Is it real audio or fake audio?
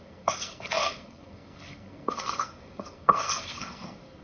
fake